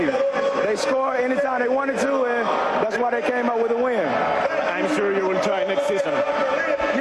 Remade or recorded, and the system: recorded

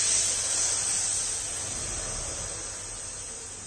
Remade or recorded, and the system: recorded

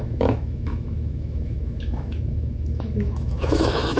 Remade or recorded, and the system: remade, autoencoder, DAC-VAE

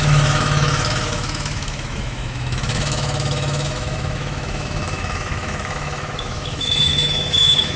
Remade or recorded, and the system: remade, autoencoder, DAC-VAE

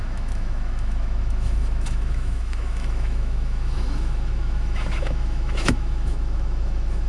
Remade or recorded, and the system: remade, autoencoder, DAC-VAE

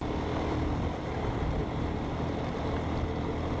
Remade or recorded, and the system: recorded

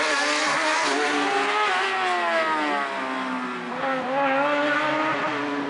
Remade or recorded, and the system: recorded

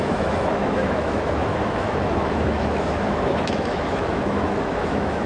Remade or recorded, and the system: remade, autoencoder, DAC-VAE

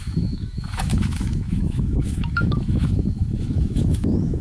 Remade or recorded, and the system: remade, autoencoder, DAC-VAE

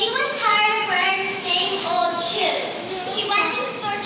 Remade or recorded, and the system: remade, autoencoder, DAC-VAE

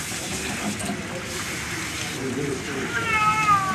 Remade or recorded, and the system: recorded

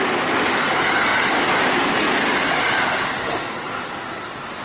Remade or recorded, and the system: recorded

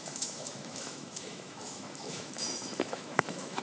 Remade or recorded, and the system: remade, autoencoder, DAC-VAE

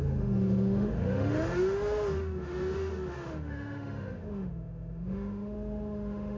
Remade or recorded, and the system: remade, autoencoder, DAC-VAE